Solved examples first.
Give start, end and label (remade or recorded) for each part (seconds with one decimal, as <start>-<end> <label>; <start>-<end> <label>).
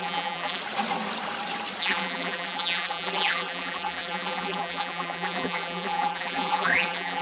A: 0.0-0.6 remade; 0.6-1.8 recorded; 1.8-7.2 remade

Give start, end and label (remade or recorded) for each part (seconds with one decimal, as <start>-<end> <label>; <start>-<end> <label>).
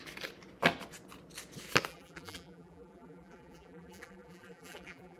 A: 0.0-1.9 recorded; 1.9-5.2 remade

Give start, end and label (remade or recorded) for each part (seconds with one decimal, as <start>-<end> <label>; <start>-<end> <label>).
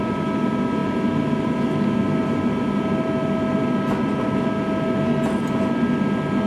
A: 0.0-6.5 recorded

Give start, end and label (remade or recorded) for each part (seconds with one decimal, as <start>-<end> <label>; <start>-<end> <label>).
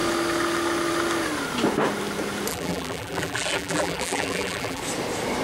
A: 0.0-2.5 recorded; 2.5-4.8 remade; 4.8-5.4 recorded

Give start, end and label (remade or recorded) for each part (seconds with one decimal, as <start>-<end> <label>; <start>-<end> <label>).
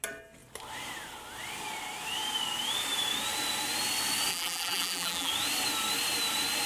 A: 0.0-4.3 recorded; 4.3-5.3 remade; 5.3-6.7 recorded